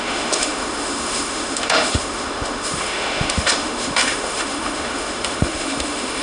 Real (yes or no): no